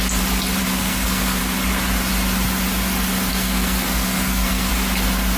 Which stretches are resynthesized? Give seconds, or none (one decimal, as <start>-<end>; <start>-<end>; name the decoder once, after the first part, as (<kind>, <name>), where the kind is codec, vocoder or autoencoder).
0.6-1.4 (codec, SNAC); 3.3-4.7